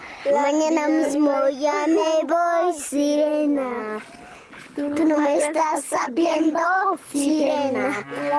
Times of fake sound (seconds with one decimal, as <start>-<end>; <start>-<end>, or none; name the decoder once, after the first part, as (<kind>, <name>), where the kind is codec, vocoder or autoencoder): 4.3-7.5 (codec, HILCodec)

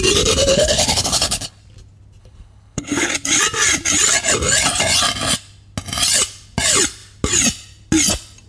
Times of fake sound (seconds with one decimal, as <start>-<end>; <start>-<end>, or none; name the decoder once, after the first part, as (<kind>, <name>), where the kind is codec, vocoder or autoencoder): 0.5-1.6 (codec, HILCodec); 2.2-3.1

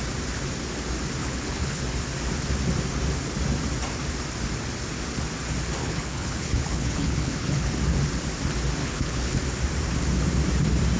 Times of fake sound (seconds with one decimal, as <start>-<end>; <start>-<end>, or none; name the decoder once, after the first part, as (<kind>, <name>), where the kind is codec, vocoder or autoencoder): 1.2-1.8 (codec, HILCodec); 5.8-7.7; 8.8-9.4

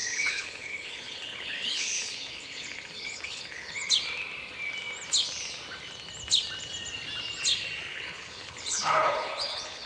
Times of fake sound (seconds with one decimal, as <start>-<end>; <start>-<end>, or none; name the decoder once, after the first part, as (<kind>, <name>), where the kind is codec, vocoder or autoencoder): 0.0-3.9 (codec, HILCodec); 7.9-9.9

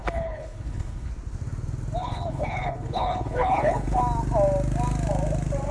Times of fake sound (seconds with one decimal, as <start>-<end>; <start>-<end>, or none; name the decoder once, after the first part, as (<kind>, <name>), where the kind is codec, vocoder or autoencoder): 0.0-1.1 (codec, HILCodec); 2.0-4.0

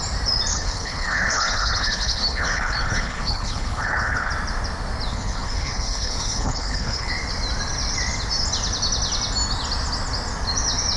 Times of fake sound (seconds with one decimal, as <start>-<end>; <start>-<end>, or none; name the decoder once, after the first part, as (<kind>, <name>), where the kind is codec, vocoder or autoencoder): 0.5-4.3 (codec, HILCodec); 5.1-7.1